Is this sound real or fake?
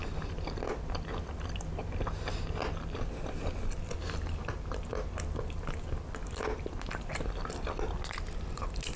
real